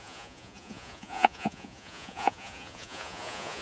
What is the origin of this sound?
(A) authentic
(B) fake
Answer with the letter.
B